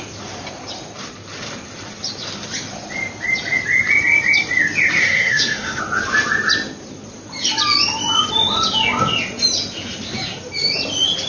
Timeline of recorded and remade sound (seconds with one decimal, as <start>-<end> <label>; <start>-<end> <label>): 0.0-5.0 recorded; 5.0-5.8 remade; 5.8-11.3 recorded

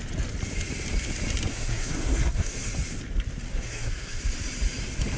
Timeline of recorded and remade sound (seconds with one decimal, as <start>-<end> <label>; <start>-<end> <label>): 0.0-1.5 recorded; 1.5-2.7 remade; 2.7-3.5 recorded; 3.5-4.2 remade; 4.2-5.2 recorded

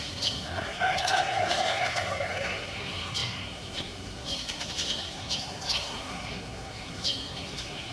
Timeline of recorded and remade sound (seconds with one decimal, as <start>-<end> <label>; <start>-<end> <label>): 0.0-7.9 remade

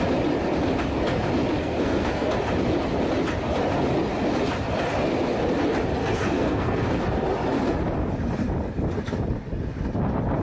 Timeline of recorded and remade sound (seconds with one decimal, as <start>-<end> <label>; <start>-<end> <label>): 0.0-1.6 recorded; 1.6-2.3 remade; 2.3-6.0 recorded; 6.0-7.0 remade; 7.0-10.4 recorded

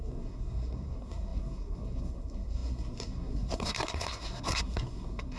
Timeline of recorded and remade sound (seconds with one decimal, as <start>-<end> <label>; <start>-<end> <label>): 0.0-5.4 remade

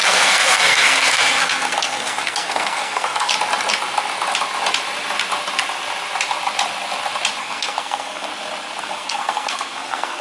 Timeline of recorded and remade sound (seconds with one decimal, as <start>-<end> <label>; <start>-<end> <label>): 0.0-3.3 remade; 3.3-7.4 recorded; 7.4-8.3 remade; 8.3-8.8 recorded; 8.8-10.2 remade

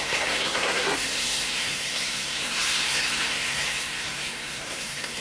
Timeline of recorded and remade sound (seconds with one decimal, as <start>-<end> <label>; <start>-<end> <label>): 0.0-5.2 remade